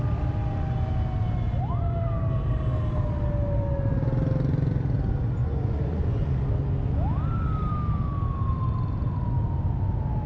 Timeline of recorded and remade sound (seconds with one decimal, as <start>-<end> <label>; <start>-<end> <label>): 0.0-5.4 recorded; 5.4-6.3 remade; 6.3-10.3 recorded